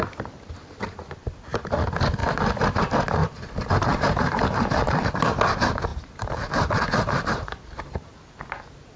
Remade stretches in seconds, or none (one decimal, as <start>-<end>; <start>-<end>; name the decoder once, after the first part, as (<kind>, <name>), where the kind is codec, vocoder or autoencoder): 3.2-5.0 (vocoder, BigVGAN v2); 5.9-8.3